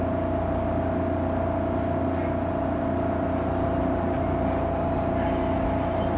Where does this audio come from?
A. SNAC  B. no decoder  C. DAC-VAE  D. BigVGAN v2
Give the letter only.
B